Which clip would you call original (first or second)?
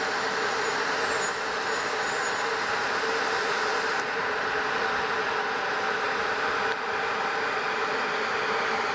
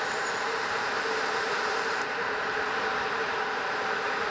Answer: first